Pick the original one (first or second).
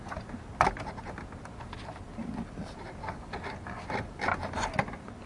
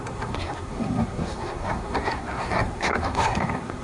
first